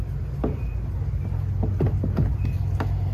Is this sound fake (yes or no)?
no